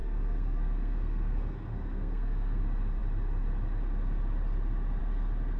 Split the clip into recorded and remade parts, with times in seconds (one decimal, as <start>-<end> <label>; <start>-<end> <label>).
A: 0.0-2.6 remade; 2.6-5.6 recorded